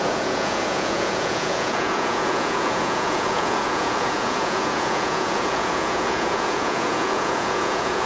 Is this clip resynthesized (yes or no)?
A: yes